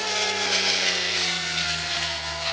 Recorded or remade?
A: remade